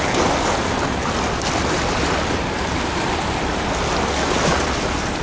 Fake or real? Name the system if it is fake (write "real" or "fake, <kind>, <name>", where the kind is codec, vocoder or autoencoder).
real